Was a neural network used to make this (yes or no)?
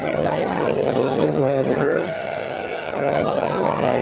yes